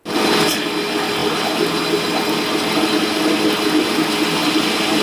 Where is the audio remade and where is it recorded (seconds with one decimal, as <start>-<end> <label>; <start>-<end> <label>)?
0.0-5.0 recorded